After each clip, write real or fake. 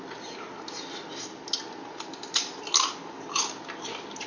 real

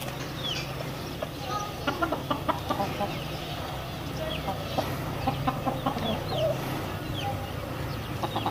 real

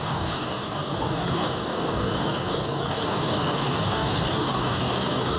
fake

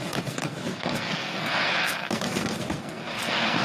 fake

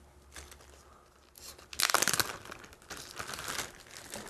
real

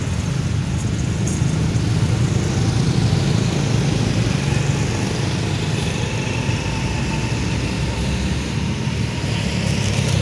real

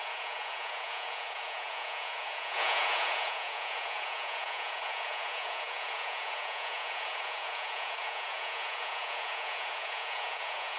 fake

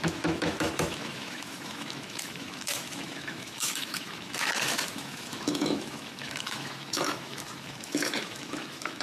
fake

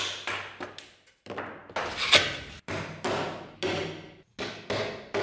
real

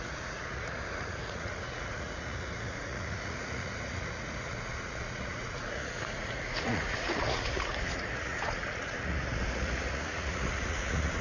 fake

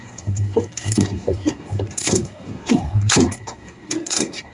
fake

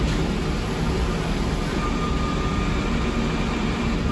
real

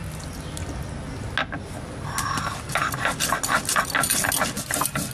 real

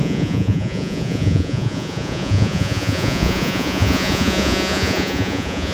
fake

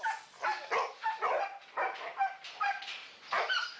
real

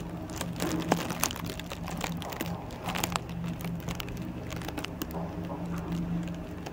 real